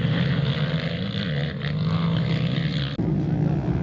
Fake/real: real